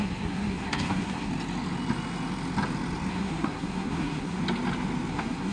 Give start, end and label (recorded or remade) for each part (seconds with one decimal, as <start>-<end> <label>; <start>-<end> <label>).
0.0-1.3 remade; 1.3-3.1 recorded; 3.1-4.4 remade; 4.4-5.1 recorded; 5.1-5.5 remade